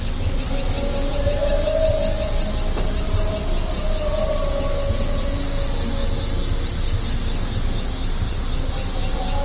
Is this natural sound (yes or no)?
yes